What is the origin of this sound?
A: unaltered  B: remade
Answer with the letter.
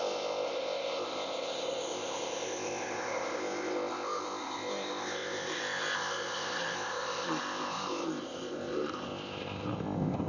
B